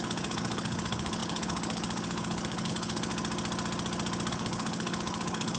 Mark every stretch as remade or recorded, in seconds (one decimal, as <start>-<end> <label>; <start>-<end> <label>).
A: 0.0-3.1 remade; 3.1-4.3 recorded; 4.3-5.6 remade